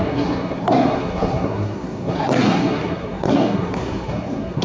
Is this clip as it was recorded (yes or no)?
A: no